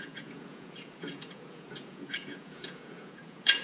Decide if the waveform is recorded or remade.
remade